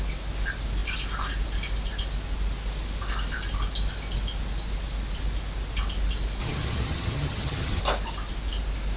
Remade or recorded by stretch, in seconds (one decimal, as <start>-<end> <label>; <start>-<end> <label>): 0.0-6.4 recorded; 6.4-7.8 remade; 7.8-9.0 recorded